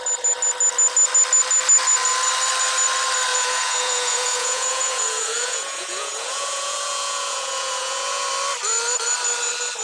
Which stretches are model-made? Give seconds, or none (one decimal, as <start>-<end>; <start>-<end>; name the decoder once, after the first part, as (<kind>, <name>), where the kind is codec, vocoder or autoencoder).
3.3-8.3 (vocoder, Vocos)